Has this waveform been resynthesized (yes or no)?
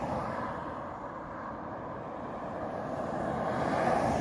yes